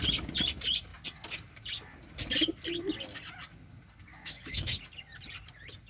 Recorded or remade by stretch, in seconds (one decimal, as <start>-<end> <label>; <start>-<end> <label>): 0.0-4.1 recorded; 4.1-4.8 remade; 4.8-5.9 recorded